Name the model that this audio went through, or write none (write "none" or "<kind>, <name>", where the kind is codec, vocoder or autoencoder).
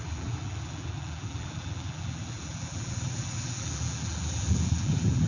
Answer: vocoder, BigVGAN v2